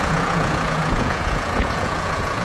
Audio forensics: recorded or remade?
remade